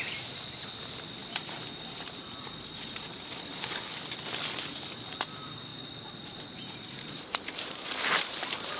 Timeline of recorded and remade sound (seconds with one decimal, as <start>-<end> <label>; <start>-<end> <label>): 0.0-1.2 recorded; 1.2-3.6 remade; 3.6-5.7 recorded; 5.7-8.8 remade